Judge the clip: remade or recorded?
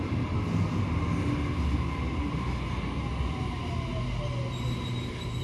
recorded